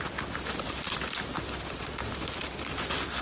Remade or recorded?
recorded